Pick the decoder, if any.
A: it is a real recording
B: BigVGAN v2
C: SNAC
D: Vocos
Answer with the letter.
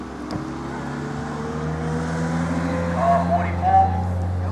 A